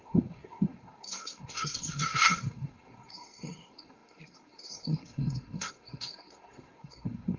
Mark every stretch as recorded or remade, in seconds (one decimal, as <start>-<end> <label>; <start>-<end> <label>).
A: 0.0-7.4 remade